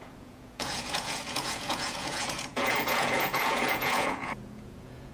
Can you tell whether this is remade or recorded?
remade